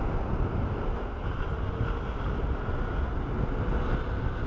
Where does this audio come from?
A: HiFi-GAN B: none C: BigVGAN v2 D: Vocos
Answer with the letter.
B